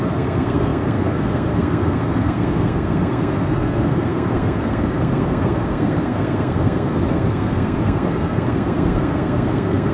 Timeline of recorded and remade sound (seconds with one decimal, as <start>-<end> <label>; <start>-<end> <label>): 0.0-9.9 remade